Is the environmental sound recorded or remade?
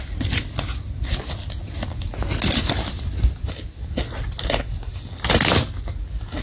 recorded